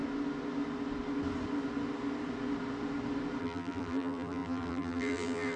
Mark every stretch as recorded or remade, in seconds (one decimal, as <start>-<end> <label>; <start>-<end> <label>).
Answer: 0.0-3.4 recorded; 3.4-5.6 remade